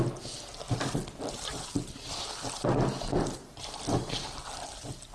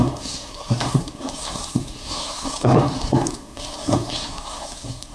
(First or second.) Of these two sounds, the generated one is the second